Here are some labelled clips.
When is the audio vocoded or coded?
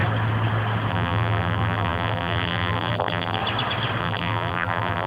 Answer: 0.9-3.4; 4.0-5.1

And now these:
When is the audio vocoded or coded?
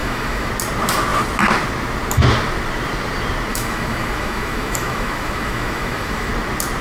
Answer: 0.0-0.5; 3.5-6.3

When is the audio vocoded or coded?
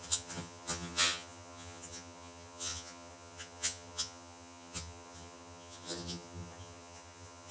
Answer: 0.0-7.5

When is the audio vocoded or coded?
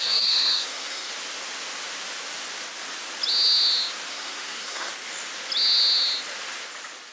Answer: 0.0-1.1; 4.1-4.9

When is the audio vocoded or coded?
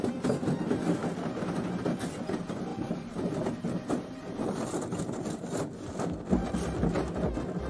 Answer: 2.7-6.3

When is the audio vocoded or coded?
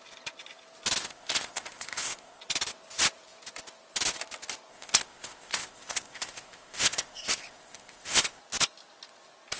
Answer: 1.0-2.4; 4.7-8.4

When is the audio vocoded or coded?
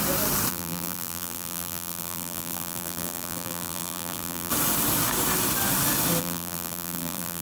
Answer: 0.5-4.5; 6.2-7.4